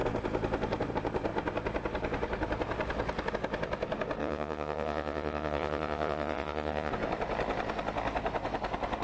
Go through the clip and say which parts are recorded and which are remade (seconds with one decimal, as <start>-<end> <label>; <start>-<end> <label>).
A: 0.0-4.2 recorded; 4.2-6.9 remade; 6.9-9.0 recorded